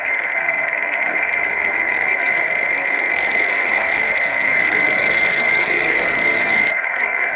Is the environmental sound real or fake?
fake